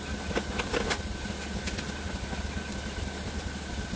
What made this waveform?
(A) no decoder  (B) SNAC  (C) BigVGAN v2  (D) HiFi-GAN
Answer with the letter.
A